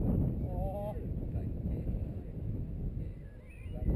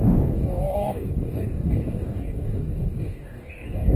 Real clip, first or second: first